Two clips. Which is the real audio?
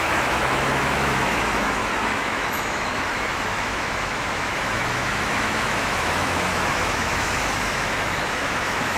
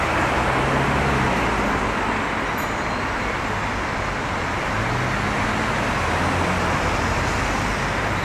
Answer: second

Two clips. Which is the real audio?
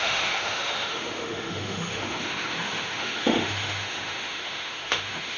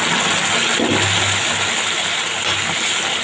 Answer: second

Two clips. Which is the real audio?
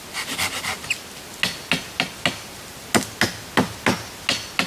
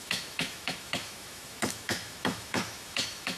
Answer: first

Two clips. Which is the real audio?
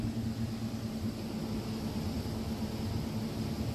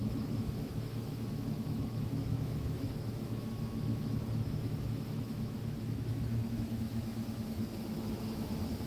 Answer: first